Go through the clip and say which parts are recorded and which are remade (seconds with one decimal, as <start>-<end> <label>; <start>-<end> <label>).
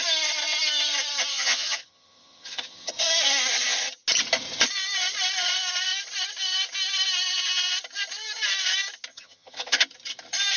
0.0-1.3 recorded; 1.3-2.9 remade; 2.9-9.1 recorded; 9.1-9.8 remade; 9.8-10.6 recorded